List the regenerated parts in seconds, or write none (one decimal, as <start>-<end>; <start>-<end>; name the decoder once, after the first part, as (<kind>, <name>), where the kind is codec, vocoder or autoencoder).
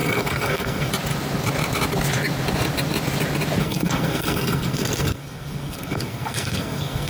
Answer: 0.0-0.9 (codec, SNAC); 3.6-7.1